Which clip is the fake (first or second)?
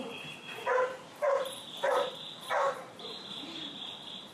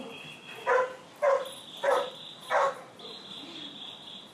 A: first